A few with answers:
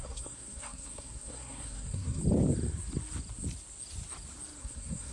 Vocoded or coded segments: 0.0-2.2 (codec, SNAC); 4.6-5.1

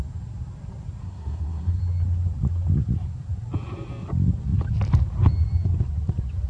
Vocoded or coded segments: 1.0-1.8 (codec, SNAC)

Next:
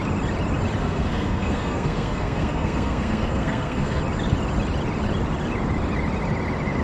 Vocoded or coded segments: 0.8-4.0 (codec, SNAC)

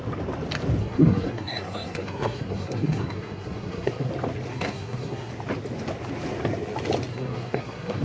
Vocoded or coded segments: 0.8-4.1 (codec, SNAC); 4.5-5.3; 7.1-8.0

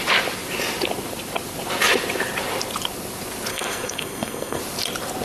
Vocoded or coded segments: 3.5-4.6 (codec, SNAC)

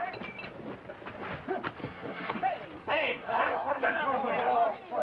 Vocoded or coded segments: 1.8-2.4 (codec, SNAC); 2.8-4.0